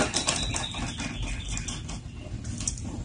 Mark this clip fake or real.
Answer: real